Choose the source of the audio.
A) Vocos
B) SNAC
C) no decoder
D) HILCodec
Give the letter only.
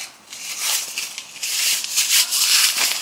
C